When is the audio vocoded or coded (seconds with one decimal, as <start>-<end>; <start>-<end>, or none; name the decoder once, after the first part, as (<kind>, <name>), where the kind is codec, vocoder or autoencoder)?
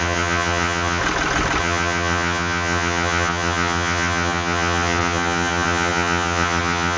0.0-1.0 (vocoder, HiFi-GAN); 1.6-7.0